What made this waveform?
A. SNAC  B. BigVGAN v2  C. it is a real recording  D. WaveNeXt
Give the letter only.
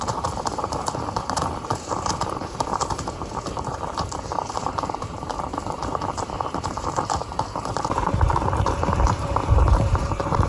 B